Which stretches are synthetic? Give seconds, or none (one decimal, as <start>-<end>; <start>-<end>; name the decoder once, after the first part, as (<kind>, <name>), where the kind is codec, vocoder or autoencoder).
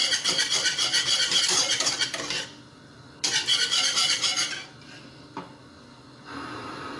0.0-1.4 (vocoder, BigVGAN v2); 4.0-5.5